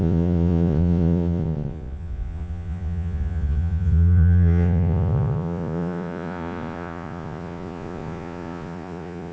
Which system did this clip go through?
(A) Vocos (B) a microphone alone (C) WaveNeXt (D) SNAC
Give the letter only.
A